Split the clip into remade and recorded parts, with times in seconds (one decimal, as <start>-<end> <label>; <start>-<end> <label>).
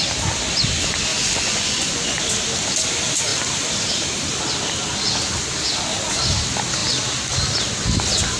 0.0-1.1 recorded; 1.1-2.3 remade; 2.3-8.4 recorded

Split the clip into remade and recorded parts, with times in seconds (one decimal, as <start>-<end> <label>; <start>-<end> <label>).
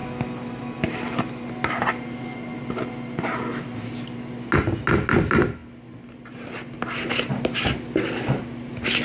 0.0-9.0 recorded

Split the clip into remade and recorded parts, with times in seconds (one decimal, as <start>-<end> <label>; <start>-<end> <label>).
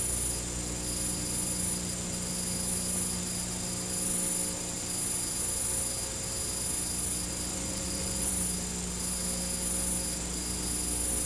0.0-7.5 recorded; 7.5-8.3 remade; 8.3-11.3 recorded